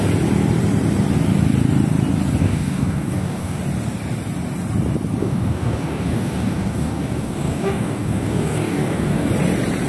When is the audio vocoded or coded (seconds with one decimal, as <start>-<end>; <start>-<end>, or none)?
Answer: 2.4-3.6; 5.2-9.3